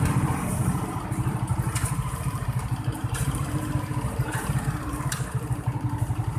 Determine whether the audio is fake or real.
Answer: fake